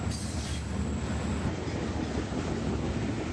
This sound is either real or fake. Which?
real